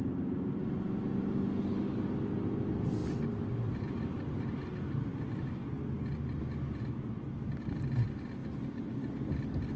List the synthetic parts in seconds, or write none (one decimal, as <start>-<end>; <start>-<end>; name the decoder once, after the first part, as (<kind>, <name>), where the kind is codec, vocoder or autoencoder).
none